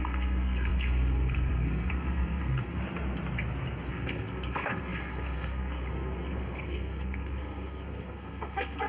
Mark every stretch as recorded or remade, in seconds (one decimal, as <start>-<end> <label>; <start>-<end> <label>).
0.0-2.8 remade; 2.8-3.9 recorded; 3.9-8.9 remade